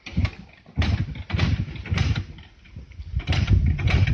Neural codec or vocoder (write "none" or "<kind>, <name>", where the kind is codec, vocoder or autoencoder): none